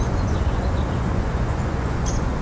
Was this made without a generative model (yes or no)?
no